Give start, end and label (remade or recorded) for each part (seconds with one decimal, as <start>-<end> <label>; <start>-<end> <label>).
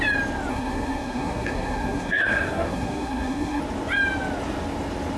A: 0.0-0.5 recorded; 0.5-3.6 remade; 3.6-5.2 recorded